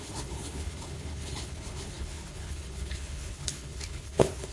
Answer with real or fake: fake